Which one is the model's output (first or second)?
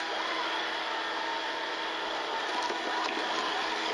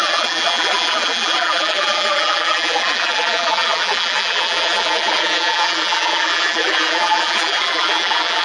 second